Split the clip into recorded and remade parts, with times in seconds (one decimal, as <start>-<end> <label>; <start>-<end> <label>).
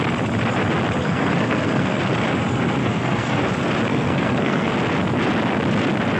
0.0-1.0 recorded; 1.0-2.0 remade; 2.0-2.8 recorded; 2.8-3.4 remade; 3.4-3.9 recorded; 3.9-4.7 remade; 4.7-6.2 recorded